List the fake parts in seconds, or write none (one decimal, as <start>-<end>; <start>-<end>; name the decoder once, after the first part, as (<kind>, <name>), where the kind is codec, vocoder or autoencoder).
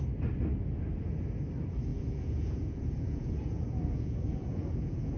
1.9-5.2 (vocoder, Vocos)